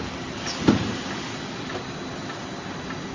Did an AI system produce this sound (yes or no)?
no